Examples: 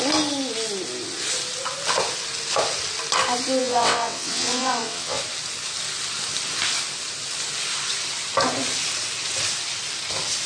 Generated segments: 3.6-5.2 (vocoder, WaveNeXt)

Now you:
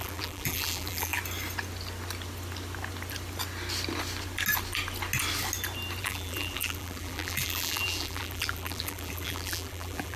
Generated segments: 0.0-1.1 (vocoder, BigVGAN v2); 6.0-10.2

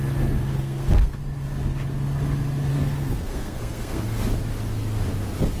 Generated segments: 0.5-1.2 (codec, SNAC); 2.7-4.0

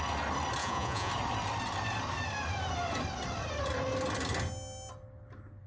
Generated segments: 0.6-1.1 (vocoder, Vocos)

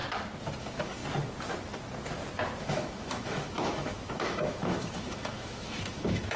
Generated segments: 0.6-1.0 (autoencoder, DAC-VAE); 2.6-6.4